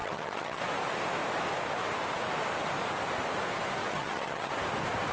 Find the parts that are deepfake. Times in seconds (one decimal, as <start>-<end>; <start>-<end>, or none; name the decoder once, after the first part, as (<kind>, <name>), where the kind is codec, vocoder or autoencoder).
0.0-0.6 (vocoder, HiFi-GAN); 3.9-4.5